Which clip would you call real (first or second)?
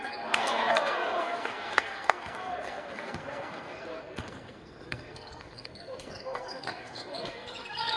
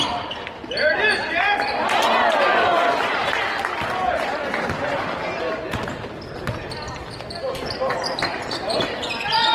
second